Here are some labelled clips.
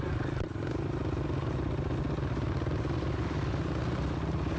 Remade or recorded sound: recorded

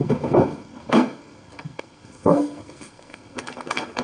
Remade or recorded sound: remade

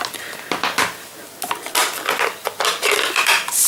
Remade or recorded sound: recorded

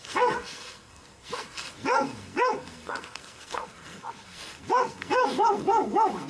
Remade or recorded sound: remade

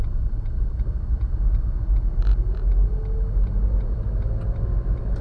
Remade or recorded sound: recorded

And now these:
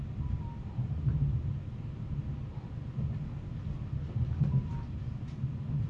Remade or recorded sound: recorded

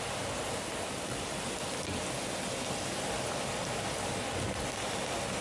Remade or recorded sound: recorded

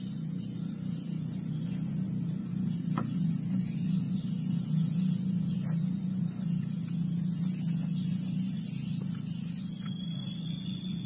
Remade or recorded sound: remade